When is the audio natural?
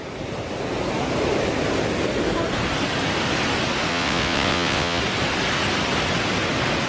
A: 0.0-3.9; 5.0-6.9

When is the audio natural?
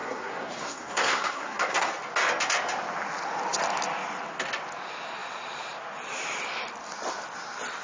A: 1.9-7.8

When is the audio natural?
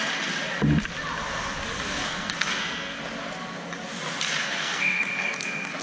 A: 0.0-2.0; 3.0-4.4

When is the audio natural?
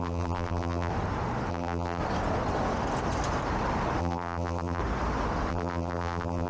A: 0.9-1.5; 2.0-4.0; 4.8-5.5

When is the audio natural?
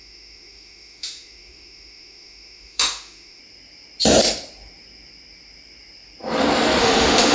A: 3.4-6.8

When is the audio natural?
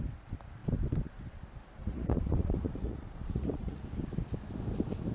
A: 0.0-1.8; 3.8-5.1